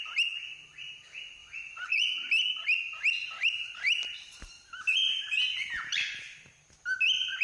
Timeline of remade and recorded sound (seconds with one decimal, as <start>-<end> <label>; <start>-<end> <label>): 0.0-1.4 recorded; 1.4-2.1 remade; 2.1-7.4 recorded